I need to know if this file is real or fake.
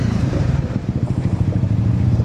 fake